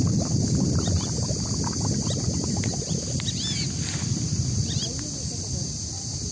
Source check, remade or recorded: recorded